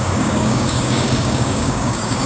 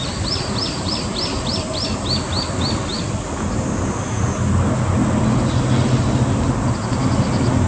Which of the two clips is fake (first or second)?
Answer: first